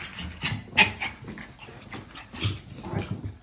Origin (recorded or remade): recorded